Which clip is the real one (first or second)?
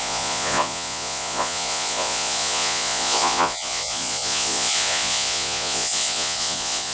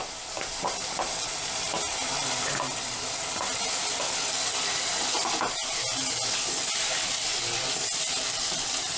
second